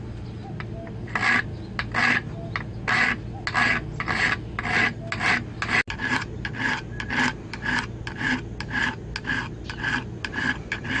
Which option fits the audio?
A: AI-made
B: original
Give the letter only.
B